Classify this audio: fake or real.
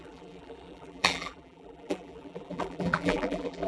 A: fake